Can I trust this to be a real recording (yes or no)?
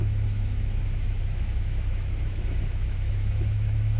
no